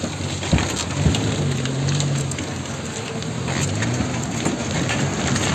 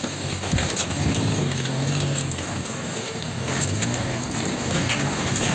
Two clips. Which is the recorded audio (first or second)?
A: first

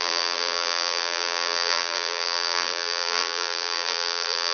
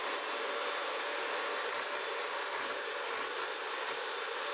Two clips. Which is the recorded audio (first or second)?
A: second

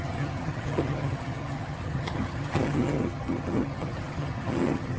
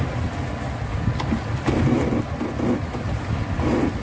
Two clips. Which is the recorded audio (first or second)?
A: second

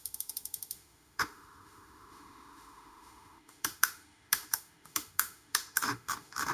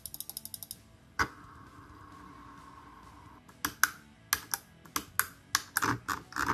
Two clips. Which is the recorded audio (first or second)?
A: second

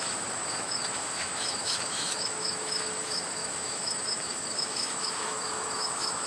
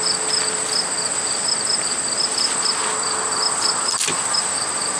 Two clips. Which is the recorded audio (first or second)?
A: second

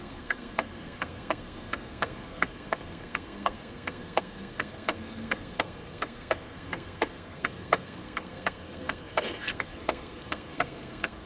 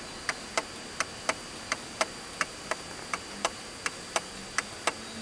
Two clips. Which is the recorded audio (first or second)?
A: second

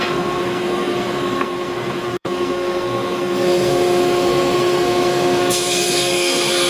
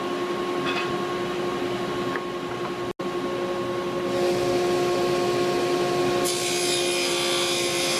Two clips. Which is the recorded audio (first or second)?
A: second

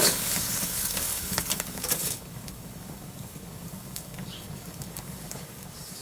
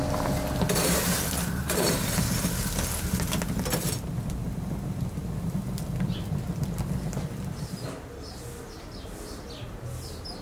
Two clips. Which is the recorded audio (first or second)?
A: second